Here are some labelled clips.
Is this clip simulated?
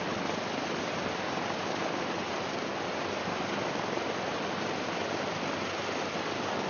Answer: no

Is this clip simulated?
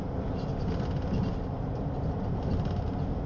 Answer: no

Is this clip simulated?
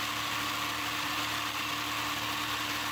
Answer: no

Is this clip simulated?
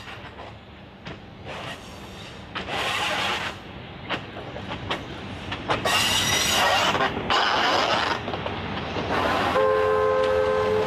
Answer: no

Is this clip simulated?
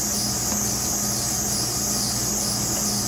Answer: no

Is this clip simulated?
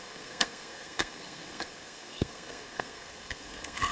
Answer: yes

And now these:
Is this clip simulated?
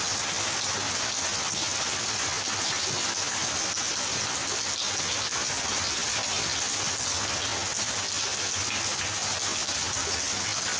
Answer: no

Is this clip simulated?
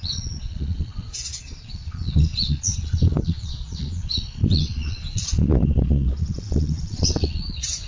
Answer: yes